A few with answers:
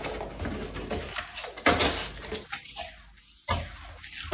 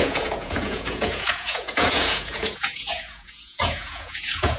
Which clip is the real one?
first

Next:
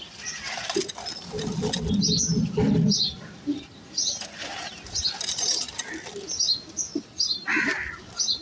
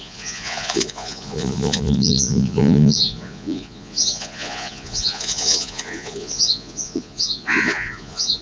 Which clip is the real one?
first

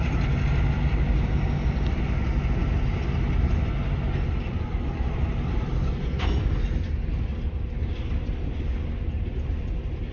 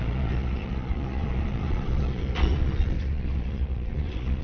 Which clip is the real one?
first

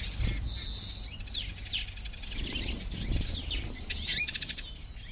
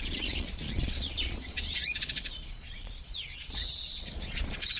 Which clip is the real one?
first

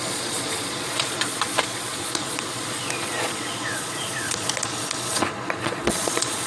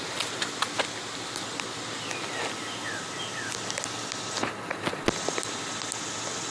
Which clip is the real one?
second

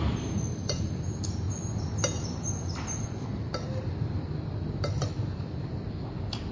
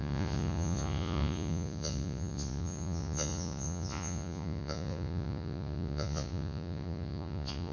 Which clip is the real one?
first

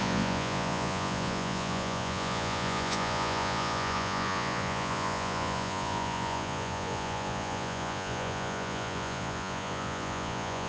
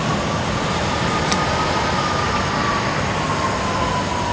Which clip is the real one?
second